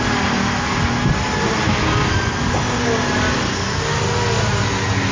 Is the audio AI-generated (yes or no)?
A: no